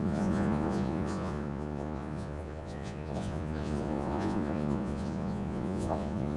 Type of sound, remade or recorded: remade